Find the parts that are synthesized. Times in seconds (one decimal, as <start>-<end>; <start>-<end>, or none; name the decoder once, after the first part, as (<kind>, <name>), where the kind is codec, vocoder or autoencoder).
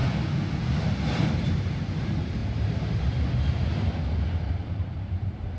1.1-5.6 (vocoder, BigVGAN v2)